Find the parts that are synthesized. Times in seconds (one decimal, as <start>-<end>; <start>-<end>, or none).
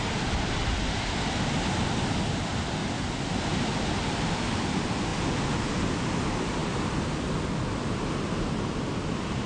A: 0.0-2.8; 4.0-5.1; 5.8-6.6; 8.3-9.5